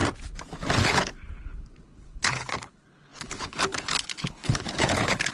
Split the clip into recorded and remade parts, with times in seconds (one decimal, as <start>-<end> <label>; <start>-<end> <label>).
0.0-0.8 recorded; 0.8-5.3 remade